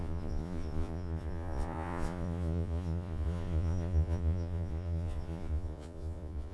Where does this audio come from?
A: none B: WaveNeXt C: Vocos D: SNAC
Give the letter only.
C